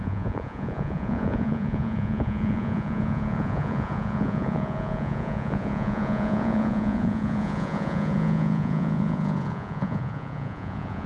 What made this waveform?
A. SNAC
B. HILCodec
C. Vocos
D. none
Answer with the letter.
C